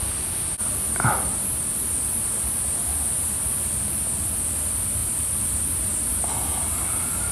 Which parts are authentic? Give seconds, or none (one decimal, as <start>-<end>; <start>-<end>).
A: 0.0-5.0; 6.3-7.3